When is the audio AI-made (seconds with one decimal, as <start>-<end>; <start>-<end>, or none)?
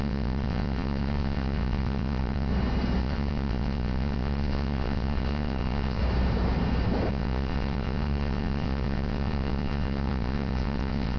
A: 0.0-2.5; 3.0-6.0; 7.1-11.2